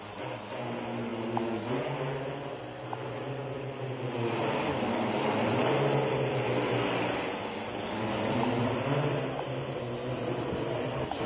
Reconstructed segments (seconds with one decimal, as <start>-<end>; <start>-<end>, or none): none

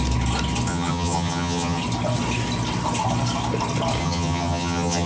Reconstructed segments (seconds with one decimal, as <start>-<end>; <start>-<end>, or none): 0.7-1.8; 4.0-5.1